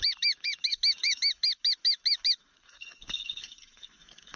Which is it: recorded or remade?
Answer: remade